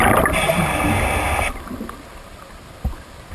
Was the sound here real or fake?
real